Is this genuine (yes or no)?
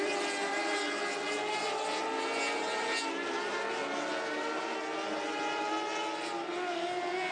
yes